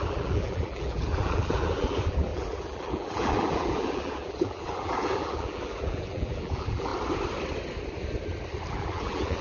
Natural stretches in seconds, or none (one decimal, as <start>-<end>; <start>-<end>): 6.9-8.7